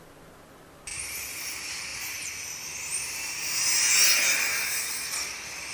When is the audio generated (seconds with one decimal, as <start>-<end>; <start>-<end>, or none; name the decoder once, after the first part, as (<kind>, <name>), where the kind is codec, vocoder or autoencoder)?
1.9-2.6 (vocoder, BigVGAN v2)